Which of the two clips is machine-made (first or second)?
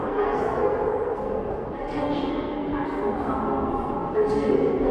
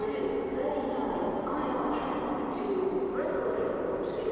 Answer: first